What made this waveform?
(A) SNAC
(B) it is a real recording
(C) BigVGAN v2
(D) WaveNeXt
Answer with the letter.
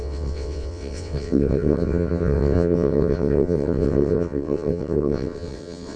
D